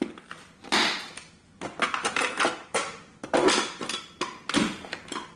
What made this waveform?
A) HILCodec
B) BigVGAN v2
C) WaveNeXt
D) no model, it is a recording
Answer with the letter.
D